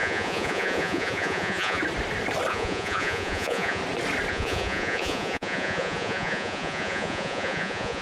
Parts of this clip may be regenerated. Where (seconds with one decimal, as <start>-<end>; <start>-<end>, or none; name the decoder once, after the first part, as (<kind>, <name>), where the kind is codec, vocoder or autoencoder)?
0.0-1.8 (vocoder, Vocos); 2.5-3.8; 4.3-8.0